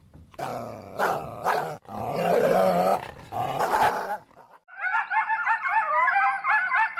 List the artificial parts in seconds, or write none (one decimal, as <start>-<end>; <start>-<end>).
0.5-2.0; 2.9-3.6; 4.1-7.0